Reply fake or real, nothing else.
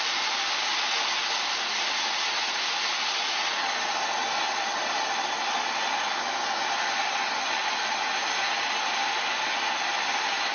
real